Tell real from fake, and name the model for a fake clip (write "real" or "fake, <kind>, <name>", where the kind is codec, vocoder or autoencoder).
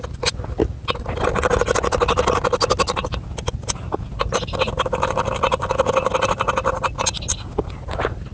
real